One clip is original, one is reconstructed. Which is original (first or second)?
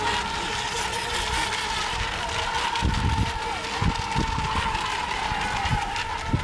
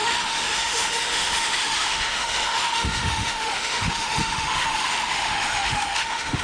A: first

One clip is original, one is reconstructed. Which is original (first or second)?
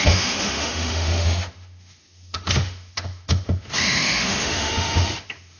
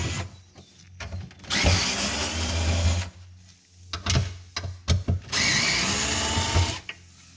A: second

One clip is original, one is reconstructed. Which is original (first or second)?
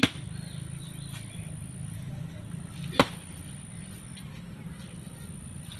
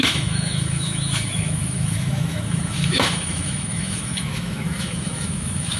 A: first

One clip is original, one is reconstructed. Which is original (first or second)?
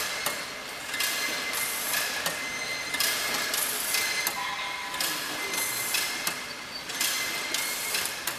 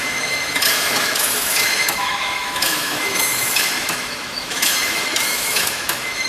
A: first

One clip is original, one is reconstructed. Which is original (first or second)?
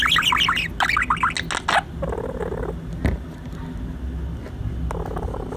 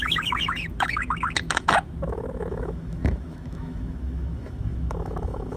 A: first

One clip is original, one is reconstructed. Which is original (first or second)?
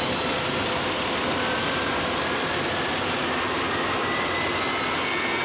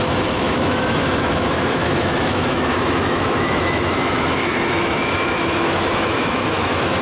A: first